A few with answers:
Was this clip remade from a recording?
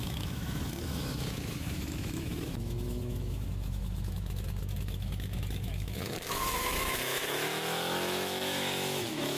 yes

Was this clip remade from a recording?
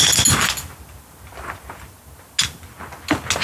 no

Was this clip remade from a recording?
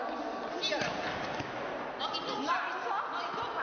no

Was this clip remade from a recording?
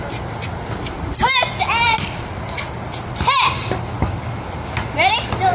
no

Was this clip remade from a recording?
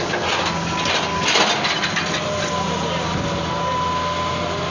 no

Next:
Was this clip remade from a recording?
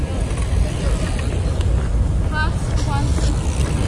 no